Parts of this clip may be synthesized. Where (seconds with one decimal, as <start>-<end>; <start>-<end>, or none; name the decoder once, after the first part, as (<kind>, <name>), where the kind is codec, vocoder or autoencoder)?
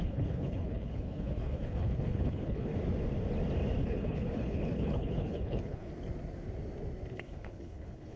0.0-2.7 (codec, HILCodec); 3.8-5.9; 7.1-8.2